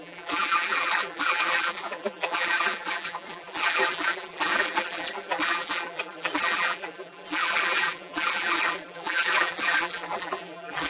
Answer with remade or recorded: remade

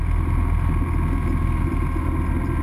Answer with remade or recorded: recorded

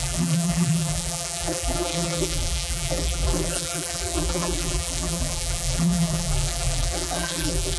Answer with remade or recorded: remade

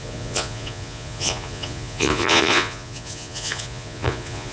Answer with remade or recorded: remade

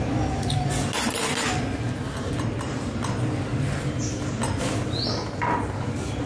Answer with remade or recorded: recorded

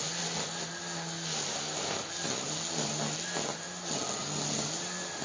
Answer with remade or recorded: recorded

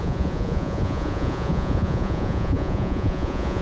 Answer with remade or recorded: remade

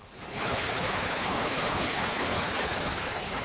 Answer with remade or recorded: remade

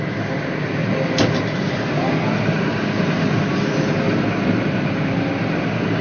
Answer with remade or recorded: recorded